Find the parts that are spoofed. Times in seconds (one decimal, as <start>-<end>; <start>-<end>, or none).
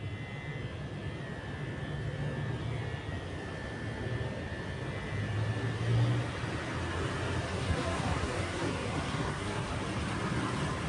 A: 7.5-9.7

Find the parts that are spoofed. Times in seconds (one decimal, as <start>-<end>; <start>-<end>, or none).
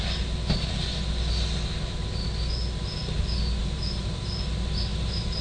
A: 3.6-4.3; 4.9-5.4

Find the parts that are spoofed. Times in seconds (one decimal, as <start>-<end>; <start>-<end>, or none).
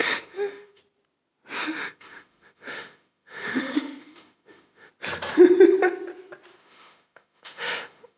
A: 0.0-0.8; 1.6-4.9; 6.6-8.2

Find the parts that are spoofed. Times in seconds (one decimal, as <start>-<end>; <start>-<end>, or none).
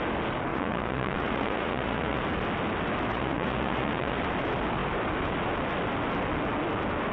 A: 0.5-2.2; 3.1-4.2